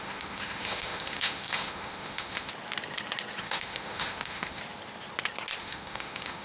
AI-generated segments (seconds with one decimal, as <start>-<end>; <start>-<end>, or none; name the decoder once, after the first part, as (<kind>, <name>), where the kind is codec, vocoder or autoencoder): 0.0-2.5 (autoencoder, DAC-VAE); 3.4-4.6; 5.6-6.4